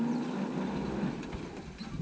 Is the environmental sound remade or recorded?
recorded